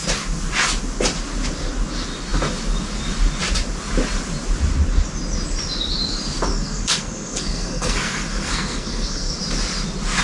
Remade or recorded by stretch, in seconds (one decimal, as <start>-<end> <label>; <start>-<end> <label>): 0.0-6.5 recorded; 6.5-9.4 remade; 9.4-10.2 recorded